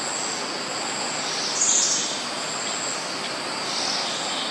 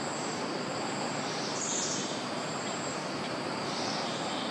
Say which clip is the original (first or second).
first